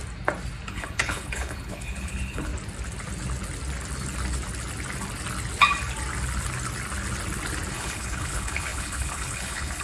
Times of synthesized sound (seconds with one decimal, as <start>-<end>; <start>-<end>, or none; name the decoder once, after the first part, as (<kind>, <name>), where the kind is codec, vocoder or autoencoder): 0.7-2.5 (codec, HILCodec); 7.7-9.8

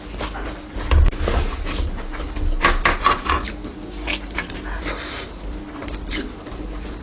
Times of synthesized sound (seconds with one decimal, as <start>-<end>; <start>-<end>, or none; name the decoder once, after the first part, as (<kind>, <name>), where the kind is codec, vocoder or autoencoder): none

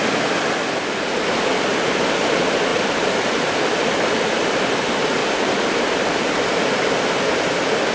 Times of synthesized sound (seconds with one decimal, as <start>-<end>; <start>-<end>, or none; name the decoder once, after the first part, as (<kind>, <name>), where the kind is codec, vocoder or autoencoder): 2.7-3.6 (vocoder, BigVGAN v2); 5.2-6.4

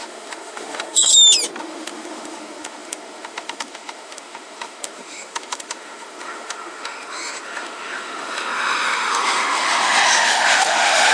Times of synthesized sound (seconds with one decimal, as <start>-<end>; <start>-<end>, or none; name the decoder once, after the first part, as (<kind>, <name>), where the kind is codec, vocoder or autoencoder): 0.0-1.1 (autoencoder, DAC-VAE); 1.6-11.1